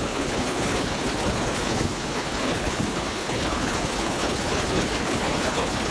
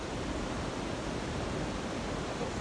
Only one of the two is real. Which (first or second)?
second